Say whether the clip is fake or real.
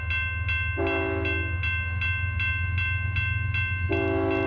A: real